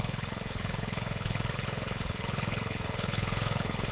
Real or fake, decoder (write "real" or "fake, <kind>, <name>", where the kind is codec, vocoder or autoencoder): fake, codec, HILCodec